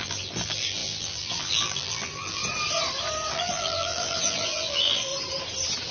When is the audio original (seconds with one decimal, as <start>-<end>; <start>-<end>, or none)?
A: 2.4-3.3; 5.1-5.9